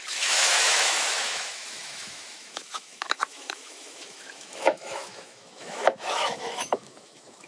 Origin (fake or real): fake